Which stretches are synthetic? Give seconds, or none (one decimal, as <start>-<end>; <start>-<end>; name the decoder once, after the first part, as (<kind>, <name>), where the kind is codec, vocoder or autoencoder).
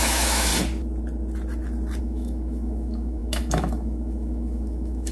0.0-0.5 (autoencoder, DAC-VAE); 2.0-5.1